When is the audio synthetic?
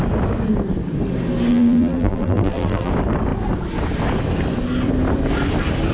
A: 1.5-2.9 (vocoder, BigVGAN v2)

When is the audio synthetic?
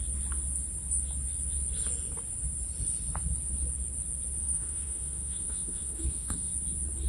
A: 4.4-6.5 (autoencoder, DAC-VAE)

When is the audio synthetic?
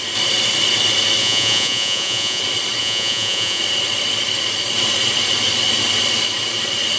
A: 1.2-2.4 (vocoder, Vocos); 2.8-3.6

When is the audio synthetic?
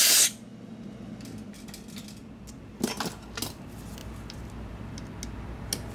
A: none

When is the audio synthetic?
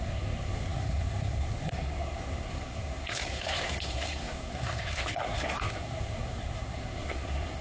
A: 0.0-7.6 (codec, SNAC)